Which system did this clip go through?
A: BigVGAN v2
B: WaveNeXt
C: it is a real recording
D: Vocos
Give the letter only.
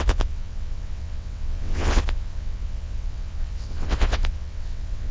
B